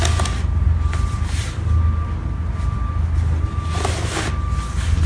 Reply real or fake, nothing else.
real